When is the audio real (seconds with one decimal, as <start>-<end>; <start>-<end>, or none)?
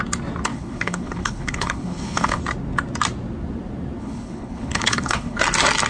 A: 0.0-0.5; 2.4-4.0; 5.4-5.9